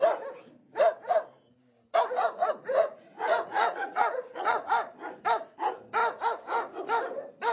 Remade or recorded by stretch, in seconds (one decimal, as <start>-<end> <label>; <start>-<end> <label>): 0.0-2.7 recorded; 2.7-4.7 remade; 4.7-7.5 recorded